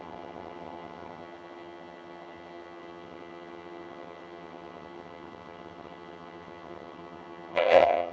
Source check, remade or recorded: remade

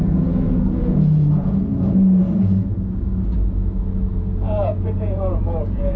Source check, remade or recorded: remade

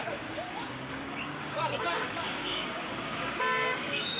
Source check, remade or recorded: remade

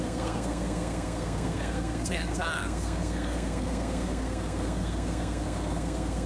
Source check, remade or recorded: remade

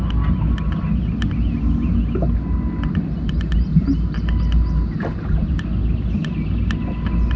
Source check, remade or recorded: recorded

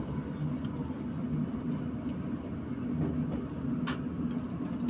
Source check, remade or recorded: recorded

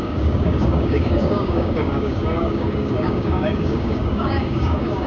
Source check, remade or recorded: remade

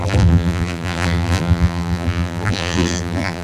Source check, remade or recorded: remade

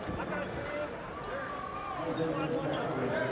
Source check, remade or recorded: recorded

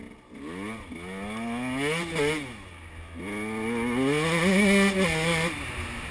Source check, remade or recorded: recorded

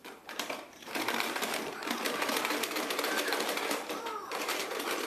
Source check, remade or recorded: remade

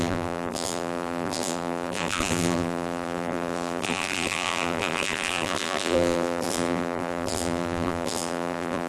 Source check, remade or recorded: remade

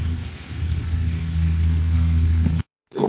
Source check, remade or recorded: remade